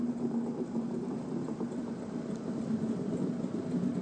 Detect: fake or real real